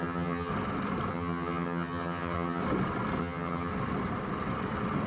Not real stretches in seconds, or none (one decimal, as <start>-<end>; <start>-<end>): 0.0-0.5; 1.1-2.6; 3.2-3.7